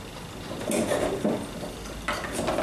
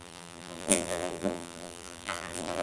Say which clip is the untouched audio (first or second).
first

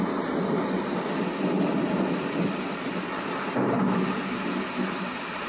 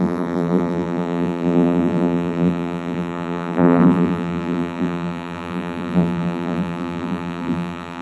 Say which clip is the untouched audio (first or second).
first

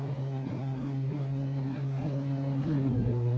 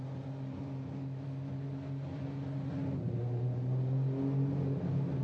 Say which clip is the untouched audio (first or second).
second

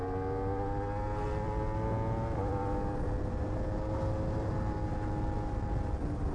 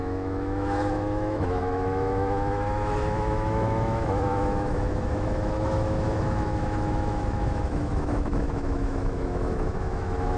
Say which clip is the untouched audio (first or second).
first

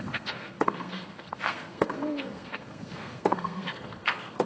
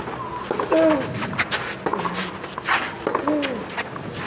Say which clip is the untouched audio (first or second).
second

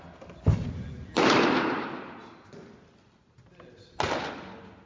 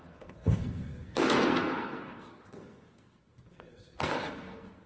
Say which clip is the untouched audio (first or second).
first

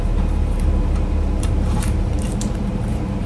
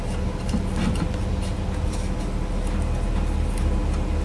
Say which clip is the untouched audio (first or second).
second